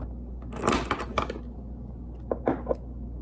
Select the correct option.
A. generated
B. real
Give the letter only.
B